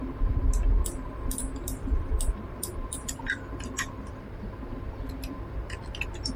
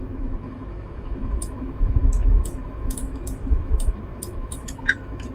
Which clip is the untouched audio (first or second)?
first